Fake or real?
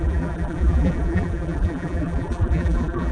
fake